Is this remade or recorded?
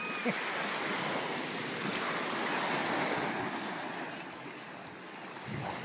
recorded